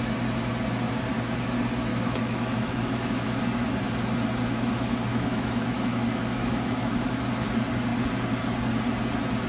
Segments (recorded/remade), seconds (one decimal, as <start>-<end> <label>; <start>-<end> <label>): 0.0-1.9 recorded; 1.9-3.4 remade; 3.4-5.1 recorded; 5.1-7.3 remade; 7.3-9.5 recorded